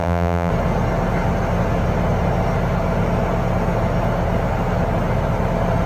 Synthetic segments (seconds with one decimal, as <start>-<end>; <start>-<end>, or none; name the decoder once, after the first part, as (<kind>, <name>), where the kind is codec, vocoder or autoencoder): 0.0-0.5 (vocoder, BigVGAN v2)

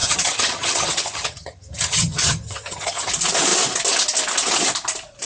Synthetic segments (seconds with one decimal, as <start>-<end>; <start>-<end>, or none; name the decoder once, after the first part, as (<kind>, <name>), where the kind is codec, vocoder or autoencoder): 0.0-3.1 (vocoder, HiFi-GAN)

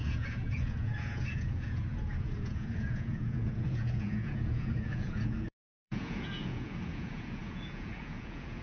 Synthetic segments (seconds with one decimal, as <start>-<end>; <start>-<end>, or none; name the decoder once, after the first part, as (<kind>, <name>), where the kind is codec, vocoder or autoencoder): 0.0-8.6 (vocoder, Vocos)

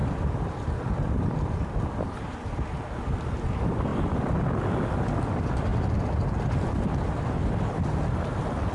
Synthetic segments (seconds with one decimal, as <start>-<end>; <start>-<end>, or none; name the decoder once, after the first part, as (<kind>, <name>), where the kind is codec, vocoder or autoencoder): 0.0-3.9 (vocoder, BigVGAN v2); 5.3-5.7

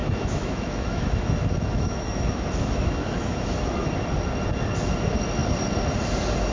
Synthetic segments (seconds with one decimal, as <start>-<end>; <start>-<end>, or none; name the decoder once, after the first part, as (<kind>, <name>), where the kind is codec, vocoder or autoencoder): 0.0-3.9 (autoencoder, DAC-VAE)

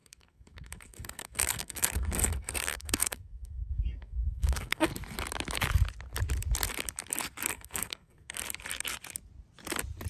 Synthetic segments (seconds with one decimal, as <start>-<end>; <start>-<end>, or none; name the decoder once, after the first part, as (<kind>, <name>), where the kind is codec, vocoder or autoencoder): 0.0-4.9 (codec, SNAC); 7.5-8.4